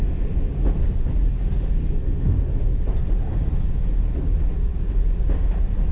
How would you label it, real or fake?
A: real